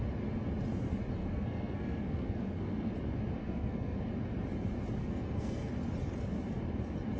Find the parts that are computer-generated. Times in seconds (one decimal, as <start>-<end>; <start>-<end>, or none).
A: 1.2-2.9; 3.4-4.0; 5.0-5.7